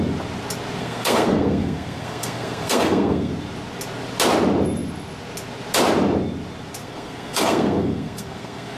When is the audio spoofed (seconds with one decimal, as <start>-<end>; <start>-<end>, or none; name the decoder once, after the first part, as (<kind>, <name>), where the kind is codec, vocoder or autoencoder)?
0.8-3.3 (codec, SNAC); 6.8-8.8